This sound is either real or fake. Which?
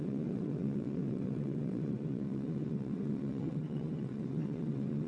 fake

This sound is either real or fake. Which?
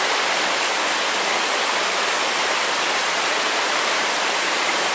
real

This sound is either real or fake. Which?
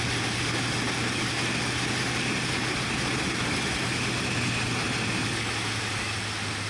real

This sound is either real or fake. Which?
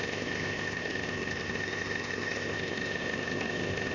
fake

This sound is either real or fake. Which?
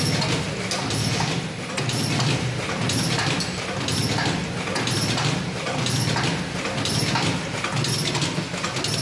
real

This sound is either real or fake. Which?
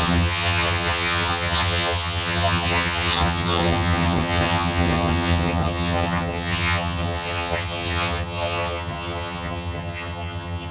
fake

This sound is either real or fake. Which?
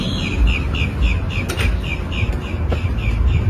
real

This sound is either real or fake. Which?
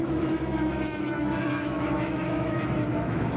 fake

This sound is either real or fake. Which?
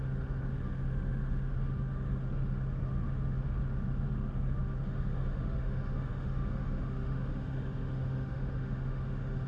fake